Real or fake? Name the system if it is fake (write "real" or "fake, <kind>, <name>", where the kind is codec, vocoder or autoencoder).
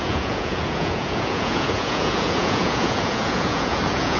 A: fake, vocoder, Vocos